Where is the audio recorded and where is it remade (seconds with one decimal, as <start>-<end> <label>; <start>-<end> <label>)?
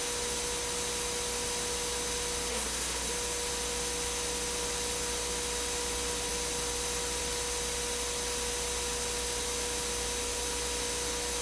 0.0-2.5 recorded; 2.5-3.1 remade; 3.1-11.4 recorded